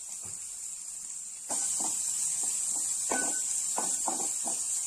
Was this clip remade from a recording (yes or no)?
no